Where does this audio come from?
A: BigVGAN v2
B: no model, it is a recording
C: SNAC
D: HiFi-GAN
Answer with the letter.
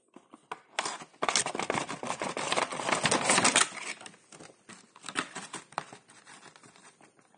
B